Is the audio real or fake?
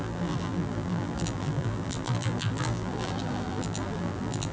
fake